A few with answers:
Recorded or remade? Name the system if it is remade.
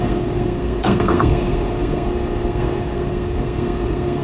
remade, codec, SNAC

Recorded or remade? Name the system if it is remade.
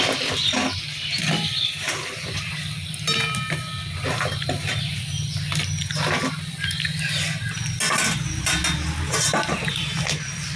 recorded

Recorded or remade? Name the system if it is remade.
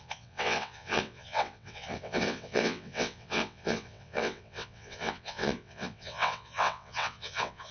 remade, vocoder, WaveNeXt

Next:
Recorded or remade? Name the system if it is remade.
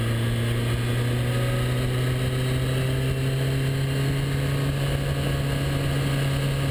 recorded